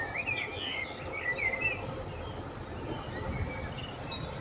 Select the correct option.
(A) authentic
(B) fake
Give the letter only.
A